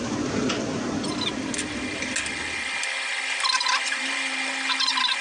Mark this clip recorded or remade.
recorded